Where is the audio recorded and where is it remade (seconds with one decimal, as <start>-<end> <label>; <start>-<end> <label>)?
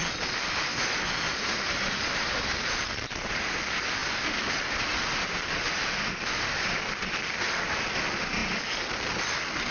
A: 0.0-9.7 recorded